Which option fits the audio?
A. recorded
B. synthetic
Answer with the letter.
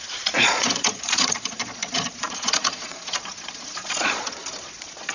B